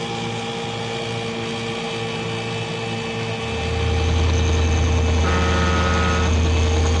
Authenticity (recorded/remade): recorded